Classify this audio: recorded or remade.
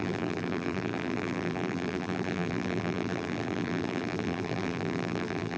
remade